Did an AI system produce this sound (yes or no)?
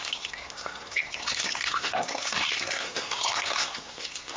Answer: yes